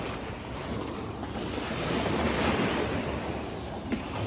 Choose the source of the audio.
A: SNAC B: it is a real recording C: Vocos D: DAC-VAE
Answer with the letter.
B